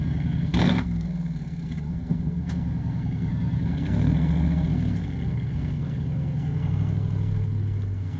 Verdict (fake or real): fake